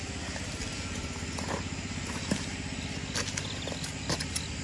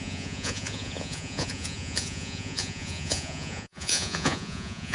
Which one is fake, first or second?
second